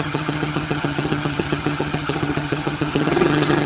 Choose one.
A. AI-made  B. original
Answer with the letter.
A